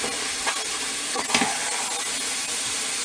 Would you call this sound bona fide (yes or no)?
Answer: yes